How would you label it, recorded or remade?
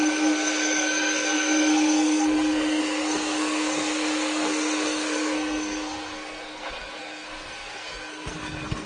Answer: remade